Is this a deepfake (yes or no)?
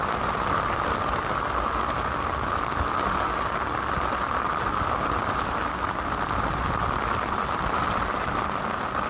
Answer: no